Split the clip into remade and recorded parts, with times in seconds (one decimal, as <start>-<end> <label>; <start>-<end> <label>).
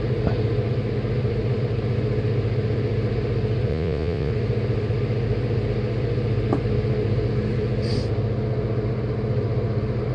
0.0-3.7 recorded; 3.7-4.3 remade; 4.3-10.1 recorded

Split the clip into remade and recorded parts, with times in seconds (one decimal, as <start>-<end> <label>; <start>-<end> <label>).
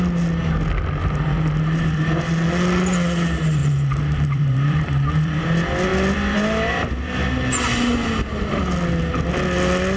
0.0-1.0 recorded; 1.0-2.1 remade; 2.1-3.6 recorded; 3.6-5.4 remade; 5.4-10.0 recorded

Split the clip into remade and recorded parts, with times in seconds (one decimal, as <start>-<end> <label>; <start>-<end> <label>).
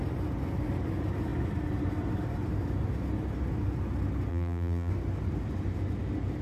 0.0-4.3 recorded; 4.3-4.9 remade; 4.9-6.4 recorded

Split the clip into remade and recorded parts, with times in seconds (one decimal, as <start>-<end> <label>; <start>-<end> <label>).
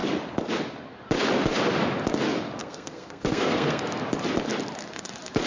0.0-2.6 recorded; 2.6-4.0 remade; 4.0-5.5 recorded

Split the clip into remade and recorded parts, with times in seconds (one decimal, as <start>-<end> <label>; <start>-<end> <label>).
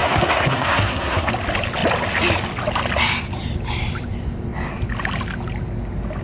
0.0-1.3 remade; 1.3-6.2 recorded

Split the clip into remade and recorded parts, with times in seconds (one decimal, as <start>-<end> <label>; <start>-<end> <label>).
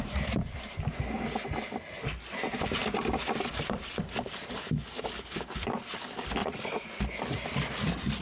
0.0-6.4 recorded; 6.4-7.0 remade; 7.0-8.2 recorded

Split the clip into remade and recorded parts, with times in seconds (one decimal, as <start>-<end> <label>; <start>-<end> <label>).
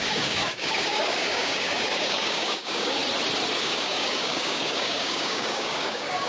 0.0-3.0 remade; 3.0-3.6 recorded; 3.6-6.3 remade